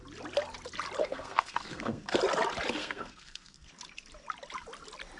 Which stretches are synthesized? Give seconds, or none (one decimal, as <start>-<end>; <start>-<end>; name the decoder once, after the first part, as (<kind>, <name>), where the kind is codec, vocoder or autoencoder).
1.0-2.2 (codec, SNAC); 2.8-3.7